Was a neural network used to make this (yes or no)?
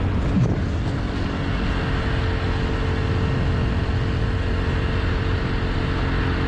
no